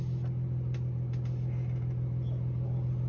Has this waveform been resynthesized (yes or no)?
no